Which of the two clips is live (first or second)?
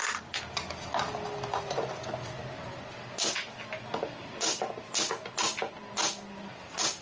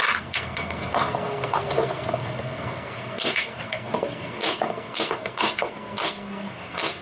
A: first